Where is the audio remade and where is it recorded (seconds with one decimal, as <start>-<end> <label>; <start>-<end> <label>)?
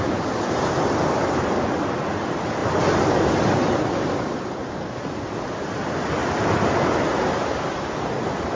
0.0-8.5 recorded